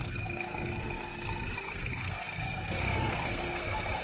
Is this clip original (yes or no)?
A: no